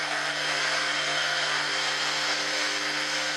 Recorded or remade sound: remade